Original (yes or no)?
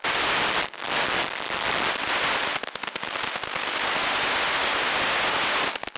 yes